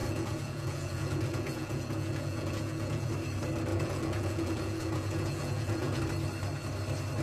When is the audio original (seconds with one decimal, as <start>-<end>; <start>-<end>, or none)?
3.1-3.7; 6.0-7.2

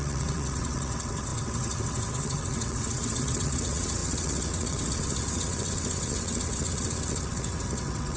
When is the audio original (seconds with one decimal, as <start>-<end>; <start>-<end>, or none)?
none

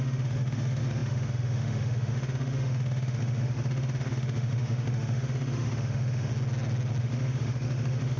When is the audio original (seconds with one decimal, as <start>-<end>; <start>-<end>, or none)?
6.3-7.0

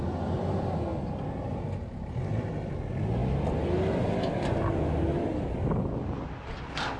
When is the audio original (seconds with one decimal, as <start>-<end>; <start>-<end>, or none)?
0.0-7.0

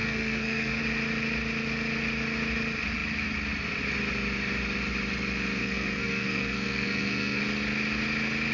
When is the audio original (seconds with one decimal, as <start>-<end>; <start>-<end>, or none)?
0.8-5.6; 7.4-8.5

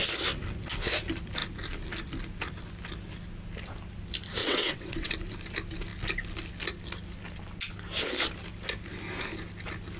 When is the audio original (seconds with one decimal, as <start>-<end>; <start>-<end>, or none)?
0.0-4.4; 5.1-10.0